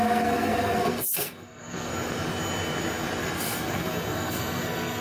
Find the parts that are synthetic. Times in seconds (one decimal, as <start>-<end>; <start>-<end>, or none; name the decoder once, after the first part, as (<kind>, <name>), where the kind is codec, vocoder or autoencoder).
0.0-1.9 (codec, SNAC); 3.2-5.0